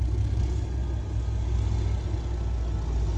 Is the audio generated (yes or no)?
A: no